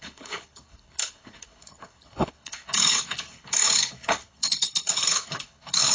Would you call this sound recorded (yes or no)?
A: no